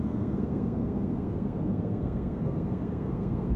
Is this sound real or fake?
fake